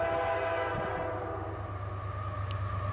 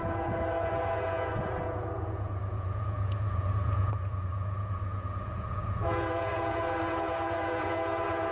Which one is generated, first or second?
second